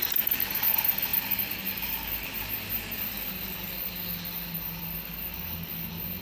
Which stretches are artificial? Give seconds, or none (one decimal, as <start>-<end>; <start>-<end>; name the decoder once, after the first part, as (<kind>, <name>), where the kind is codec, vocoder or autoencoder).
none